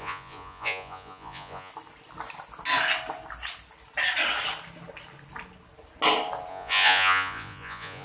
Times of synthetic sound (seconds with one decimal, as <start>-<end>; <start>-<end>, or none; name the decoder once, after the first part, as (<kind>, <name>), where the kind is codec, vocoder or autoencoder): 0.0-1.7 (vocoder, Vocos); 6.5-8.0

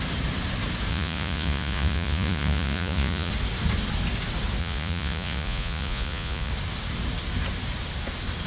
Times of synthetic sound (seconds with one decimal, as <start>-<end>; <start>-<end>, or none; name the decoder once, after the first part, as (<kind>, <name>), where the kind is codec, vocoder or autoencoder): 0.9-3.3 (vocoder, Vocos); 4.6-6.5

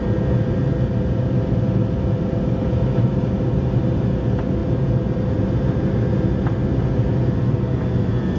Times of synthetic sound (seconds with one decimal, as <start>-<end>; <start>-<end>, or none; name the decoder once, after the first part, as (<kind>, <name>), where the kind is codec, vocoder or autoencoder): none

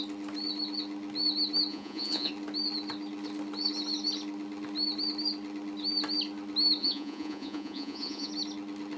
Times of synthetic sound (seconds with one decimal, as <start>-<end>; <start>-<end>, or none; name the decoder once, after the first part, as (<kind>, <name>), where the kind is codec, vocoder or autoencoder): 1.7-2.3 (vocoder, Vocos); 6.8-8.3

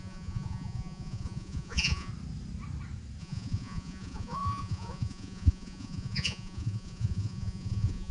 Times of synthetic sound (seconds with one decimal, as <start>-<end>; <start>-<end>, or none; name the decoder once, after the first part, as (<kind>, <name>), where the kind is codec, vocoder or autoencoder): 0.0-2.1 (vocoder, Vocos); 3.2-8.1

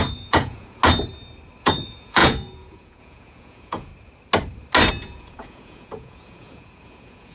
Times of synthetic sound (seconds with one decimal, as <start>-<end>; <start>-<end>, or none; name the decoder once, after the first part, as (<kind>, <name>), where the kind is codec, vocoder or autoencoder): 0.0-0.8 (vocoder, Vocos); 1.6-3.9; 4.9-7.3